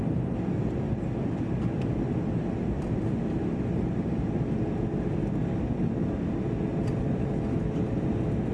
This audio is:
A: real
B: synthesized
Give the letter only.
A